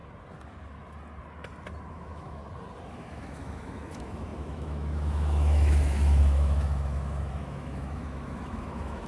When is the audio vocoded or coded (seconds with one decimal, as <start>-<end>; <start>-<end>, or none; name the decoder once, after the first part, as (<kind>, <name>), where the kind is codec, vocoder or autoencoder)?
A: 1.9-2.4 (autoencoder, DAC-VAE); 2.9-9.1